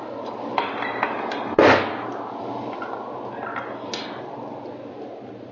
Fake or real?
real